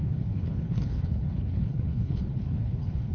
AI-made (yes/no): yes